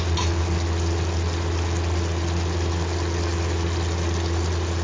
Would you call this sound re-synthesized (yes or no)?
no